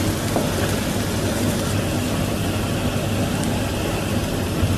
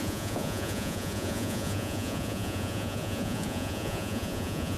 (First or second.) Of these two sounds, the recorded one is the first